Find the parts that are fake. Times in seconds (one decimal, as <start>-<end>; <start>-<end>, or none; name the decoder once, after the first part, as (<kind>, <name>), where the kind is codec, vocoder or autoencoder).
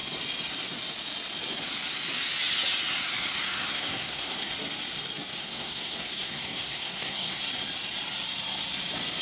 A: 3.7-4.5 (codec, SNAC); 5.4-7.4